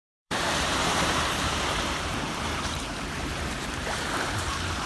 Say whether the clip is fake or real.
fake